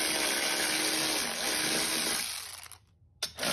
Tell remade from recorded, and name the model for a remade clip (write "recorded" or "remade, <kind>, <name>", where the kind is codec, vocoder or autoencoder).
recorded